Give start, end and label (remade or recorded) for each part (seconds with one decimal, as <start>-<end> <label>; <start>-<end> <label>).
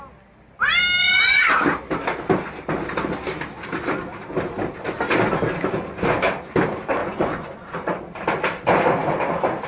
0.0-1.0 recorded; 1.0-1.5 remade; 1.5-7.0 recorded; 7.0-8.0 remade; 8.0-9.7 recorded